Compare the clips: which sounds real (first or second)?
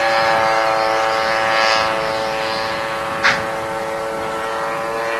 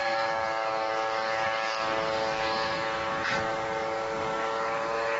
first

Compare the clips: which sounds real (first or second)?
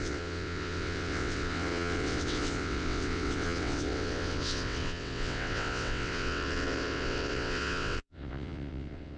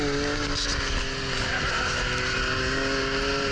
second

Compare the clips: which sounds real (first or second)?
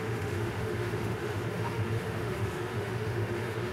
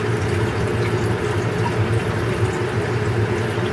second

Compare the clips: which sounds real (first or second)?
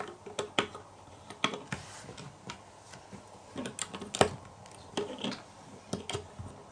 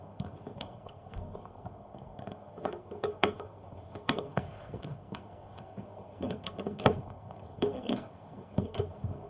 first